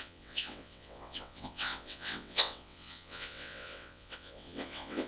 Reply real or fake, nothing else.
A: fake